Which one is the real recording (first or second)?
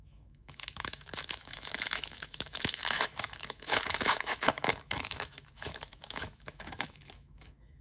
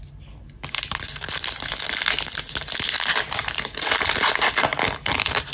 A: second